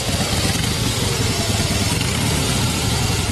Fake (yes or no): no